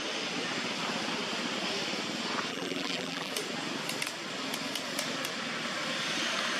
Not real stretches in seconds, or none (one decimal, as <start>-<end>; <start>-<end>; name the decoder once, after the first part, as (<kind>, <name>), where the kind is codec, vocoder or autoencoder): 2.5-3.3 (vocoder, BigVGAN v2)